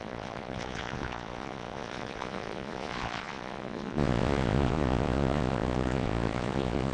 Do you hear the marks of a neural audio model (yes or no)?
yes